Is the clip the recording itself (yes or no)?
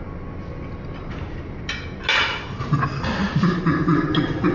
yes